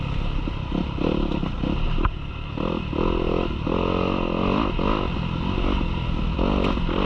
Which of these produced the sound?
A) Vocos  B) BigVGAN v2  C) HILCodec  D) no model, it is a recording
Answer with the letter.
D